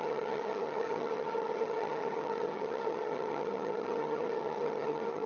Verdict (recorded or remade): remade